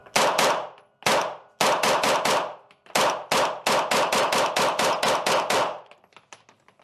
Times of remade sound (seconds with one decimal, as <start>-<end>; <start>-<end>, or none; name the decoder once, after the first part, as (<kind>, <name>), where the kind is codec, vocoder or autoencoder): none